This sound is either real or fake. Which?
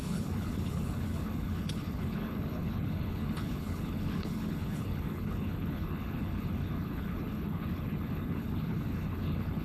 fake